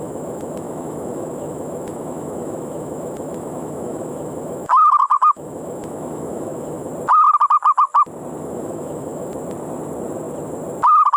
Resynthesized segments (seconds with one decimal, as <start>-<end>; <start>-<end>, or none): 0.0-6.9; 8.4-9.3

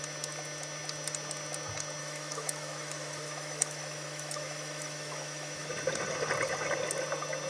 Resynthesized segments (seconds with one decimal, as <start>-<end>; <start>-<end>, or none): 2.0-5.7

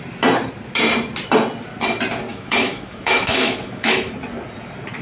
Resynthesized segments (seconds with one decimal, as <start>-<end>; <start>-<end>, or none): 2.3-4.1